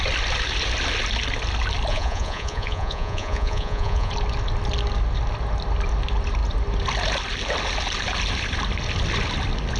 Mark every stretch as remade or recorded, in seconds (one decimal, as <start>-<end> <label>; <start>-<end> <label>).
0.0-1.9 recorded; 1.9-4.1 remade; 4.1-9.8 recorded